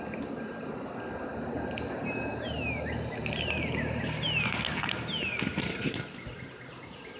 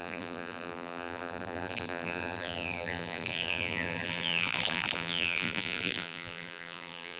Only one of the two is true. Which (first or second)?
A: first